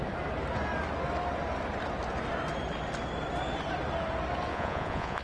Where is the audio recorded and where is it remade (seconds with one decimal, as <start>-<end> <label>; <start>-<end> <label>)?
0.0-4.5 recorded; 4.5-5.2 remade